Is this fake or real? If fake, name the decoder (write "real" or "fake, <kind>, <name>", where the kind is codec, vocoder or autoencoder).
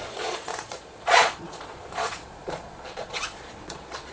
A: fake, vocoder, Vocos